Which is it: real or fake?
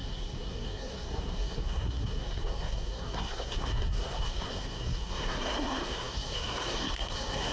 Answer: fake